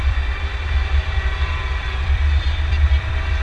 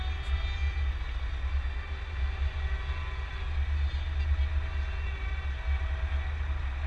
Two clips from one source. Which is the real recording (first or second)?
second